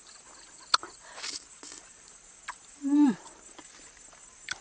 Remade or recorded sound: recorded